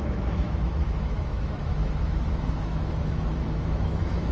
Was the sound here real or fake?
fake